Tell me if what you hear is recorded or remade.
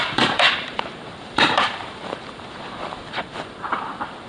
remade